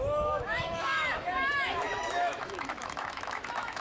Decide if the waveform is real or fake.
fake